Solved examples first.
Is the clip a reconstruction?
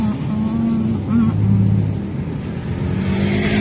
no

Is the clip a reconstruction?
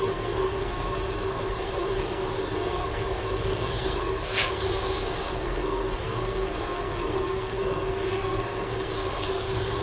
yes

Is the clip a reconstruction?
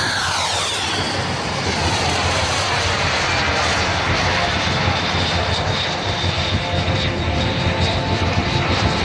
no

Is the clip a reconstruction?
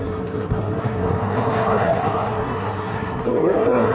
yes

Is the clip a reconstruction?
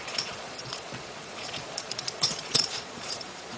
yes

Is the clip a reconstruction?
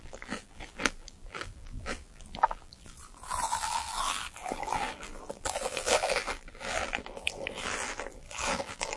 yes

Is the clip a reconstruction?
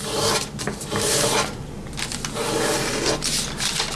no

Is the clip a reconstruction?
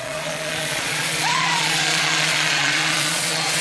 yes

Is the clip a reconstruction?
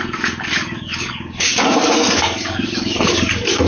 yes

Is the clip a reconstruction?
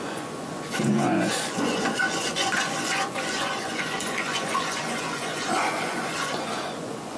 yes